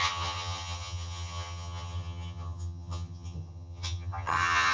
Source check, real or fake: fake